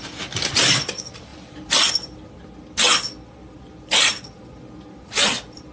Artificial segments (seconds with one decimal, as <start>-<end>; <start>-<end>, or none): 1.3-1.8